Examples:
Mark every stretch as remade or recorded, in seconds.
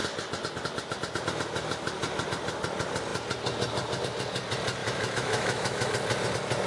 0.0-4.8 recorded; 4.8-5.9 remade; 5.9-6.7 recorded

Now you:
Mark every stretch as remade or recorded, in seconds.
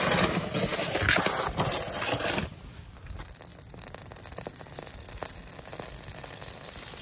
0.0-7.0 recorded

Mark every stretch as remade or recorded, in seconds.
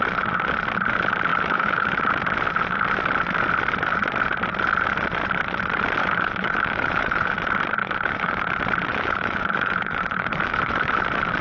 0.0-1.3 recorded; 1.3-1.9 remade; 1.9-6.0 recorded; 6.0-7.3 remade; 7.3-7.8 recorded; 7.8-8.4 remade; 8.4-8.9 recorded; 8.9-10.9 remade; 10.9-11.4 recorded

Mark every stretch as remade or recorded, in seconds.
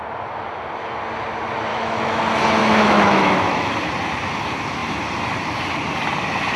0.0-1.7 recorded; 1.7-2.2 remade; 2.2-2.6 recorded; 2.6-3.9 remade; 3.9-6.6 recorded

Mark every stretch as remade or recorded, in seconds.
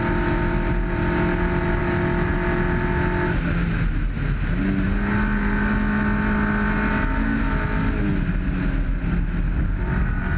0.0-10.4 recorded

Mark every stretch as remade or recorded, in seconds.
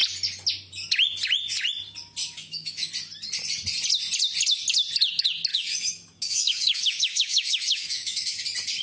0.0-2.2 recorded; 2.2-2.9 remade; 2.9-5.5 recorded; 5.5-8.4 remade; 8.4-8.8 recorded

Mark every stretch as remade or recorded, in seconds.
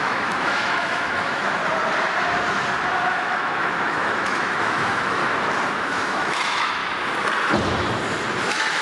0.0-1.6 remade; 1.6-3.2 recorded; 3.2-5.2 remade; 5.2-5.7 recorded; 5.7-6.8 remade; 6.8-8.4 recorded; 8.4-8.8 remade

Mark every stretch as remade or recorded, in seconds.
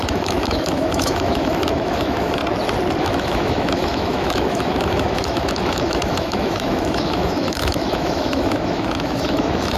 0.0-2.4 remade; 2.4-3.0 recorded; 3.0-9.8 remade